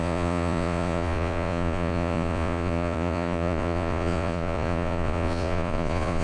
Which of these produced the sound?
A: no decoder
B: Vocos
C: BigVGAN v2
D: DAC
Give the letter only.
B